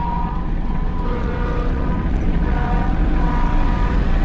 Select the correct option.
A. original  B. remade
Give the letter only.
B